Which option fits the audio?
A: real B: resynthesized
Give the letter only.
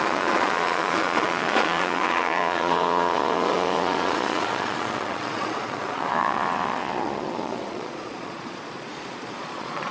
B